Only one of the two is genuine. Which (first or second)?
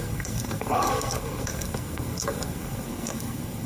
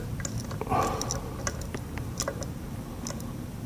second